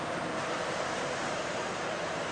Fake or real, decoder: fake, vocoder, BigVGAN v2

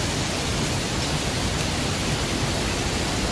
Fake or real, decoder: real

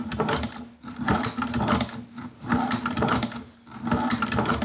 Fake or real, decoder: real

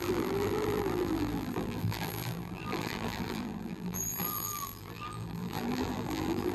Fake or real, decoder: fake, vocoder, BigVGAN v2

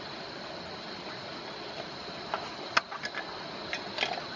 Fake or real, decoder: real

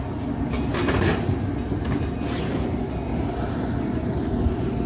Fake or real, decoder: real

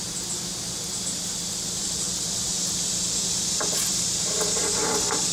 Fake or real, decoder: real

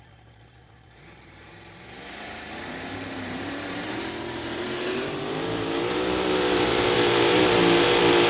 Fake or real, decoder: fake, vocoder, BigVGAN v2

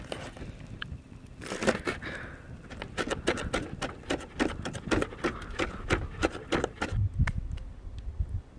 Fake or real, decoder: real